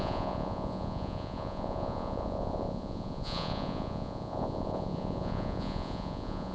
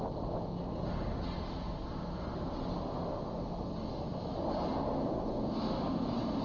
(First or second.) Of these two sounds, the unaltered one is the second